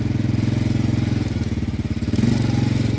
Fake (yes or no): no